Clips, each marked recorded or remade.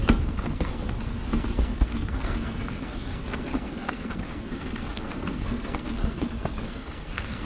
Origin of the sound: remade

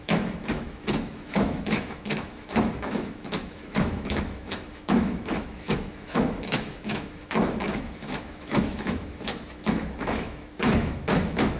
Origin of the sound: remade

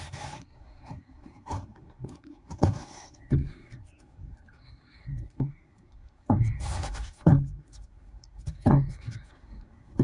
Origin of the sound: remade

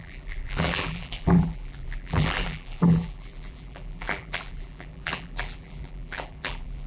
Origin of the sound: remade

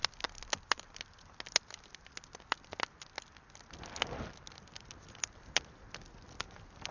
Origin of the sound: recorded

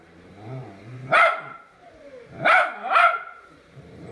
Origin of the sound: remade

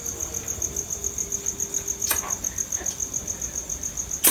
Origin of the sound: recorded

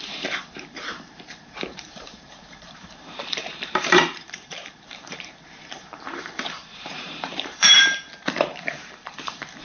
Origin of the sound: remade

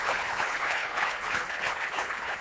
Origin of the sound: remade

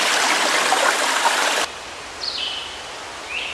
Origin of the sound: recorded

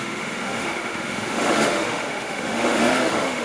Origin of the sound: remade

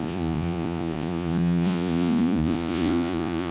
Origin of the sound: remade